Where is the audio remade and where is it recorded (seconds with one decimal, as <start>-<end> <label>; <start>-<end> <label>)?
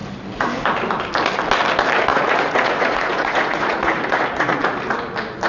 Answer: 0.0-2.1 recorded; 2.1-4.6 remade; 4.6-5.5 recorded